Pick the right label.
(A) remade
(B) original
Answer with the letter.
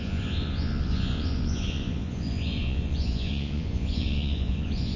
A